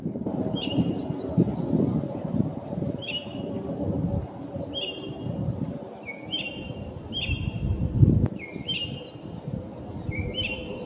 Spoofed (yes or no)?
yes